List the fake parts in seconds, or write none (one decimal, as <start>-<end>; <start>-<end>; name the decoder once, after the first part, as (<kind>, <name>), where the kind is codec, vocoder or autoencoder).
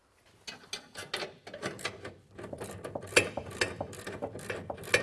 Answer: none